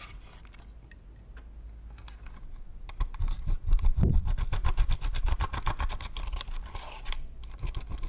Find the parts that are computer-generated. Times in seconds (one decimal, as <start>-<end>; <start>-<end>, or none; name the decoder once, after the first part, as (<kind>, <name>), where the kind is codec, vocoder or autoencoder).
2.7-5.9 (vocoder, BigVGAN v2)